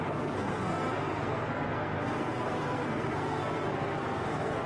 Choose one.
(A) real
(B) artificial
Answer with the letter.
B